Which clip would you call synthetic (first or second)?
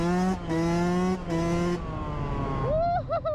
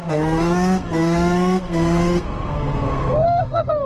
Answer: second